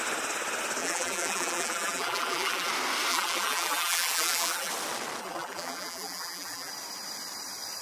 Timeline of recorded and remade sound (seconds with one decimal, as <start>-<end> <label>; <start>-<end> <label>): 0.0-0.8 recorded; 0.8-2.7 remade; 2.7-3.1 recorded; 3.1-4.7 remade; 4.7-5.2 recorded; 5.2-6.7 remade; 6.7-7.8 recorded